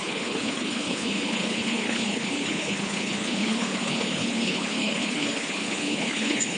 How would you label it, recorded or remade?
remade